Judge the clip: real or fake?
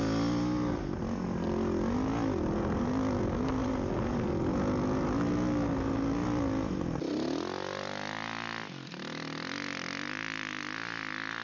real